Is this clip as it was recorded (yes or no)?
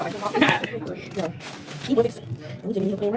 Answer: yes